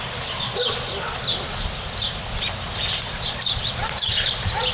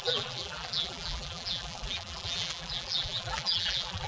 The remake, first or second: second